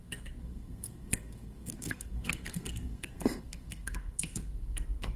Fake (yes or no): yes